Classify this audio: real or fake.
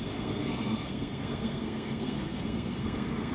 fake